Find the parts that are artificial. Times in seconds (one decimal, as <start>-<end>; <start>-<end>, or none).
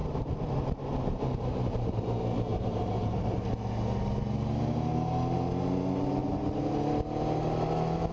0.0-2.0; 2.5-3.3; 6.2-6.8